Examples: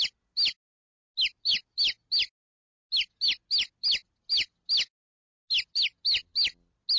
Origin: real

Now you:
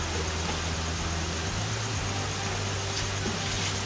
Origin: real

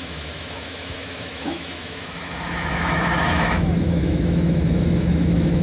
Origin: fake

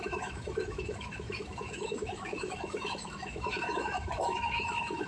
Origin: fake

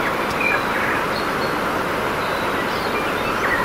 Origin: real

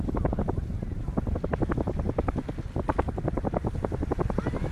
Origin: real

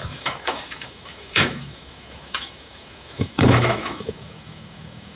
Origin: fake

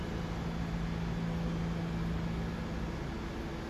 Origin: real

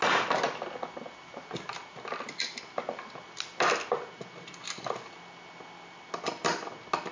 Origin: real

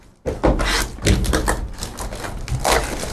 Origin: real